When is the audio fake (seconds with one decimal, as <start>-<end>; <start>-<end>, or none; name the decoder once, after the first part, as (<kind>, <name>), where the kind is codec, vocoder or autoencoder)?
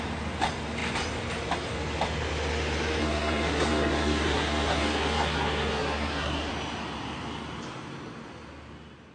3.0-6.5 (codec, SNAC)